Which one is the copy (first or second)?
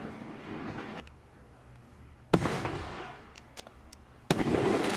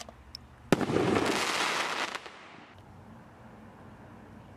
first